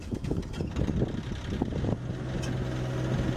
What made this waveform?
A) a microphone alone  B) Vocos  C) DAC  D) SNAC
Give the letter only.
A